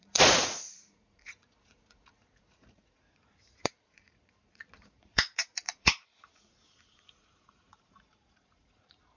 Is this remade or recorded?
remade